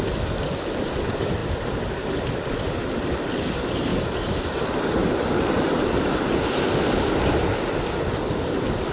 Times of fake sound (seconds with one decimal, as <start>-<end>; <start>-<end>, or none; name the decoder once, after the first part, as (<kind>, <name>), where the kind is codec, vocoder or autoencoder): none